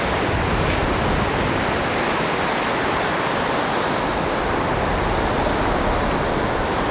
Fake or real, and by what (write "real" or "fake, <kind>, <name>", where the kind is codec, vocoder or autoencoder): real